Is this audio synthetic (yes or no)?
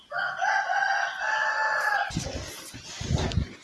no